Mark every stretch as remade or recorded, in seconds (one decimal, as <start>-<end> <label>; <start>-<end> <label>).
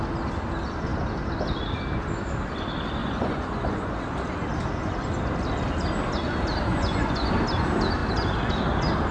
0.0-3.0 recorded; 3.0-4.0 remade; 4.0-6.7 recorded; 6.7-7.3 remade; 7.3-9.1 recorded